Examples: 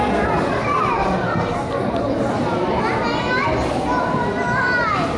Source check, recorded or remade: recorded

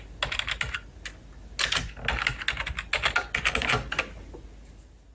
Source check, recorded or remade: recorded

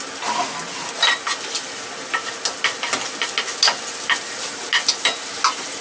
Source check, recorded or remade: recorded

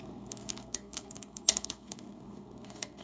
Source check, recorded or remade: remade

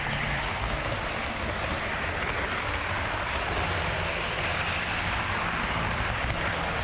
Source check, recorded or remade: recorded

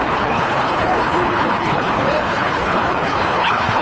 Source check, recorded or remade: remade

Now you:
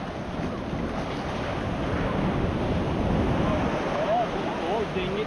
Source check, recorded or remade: recorded